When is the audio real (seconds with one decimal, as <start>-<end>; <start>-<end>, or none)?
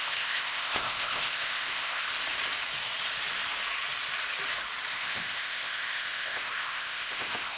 2.1-4.9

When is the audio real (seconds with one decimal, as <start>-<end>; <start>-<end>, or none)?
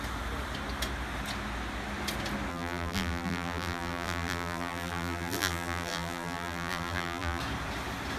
0.0-2.5; 7.4-8.2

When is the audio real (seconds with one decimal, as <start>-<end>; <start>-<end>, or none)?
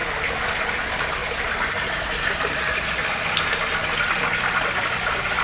0.0-5.4